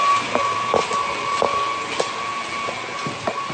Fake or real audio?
real